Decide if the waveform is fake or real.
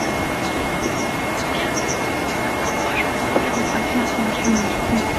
fake